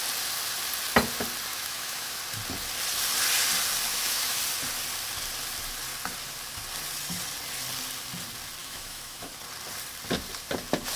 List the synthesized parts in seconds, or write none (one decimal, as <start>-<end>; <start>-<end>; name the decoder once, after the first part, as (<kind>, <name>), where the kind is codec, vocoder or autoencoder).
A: 1.5-2.2 (autoencoder, DAC-VAE); 3.9-4.4; 8.6-9.3